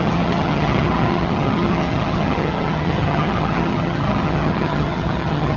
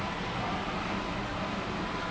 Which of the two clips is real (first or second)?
second